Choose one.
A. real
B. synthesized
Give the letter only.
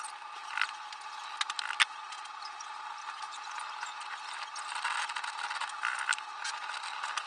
A